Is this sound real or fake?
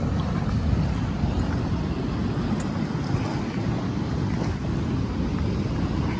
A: real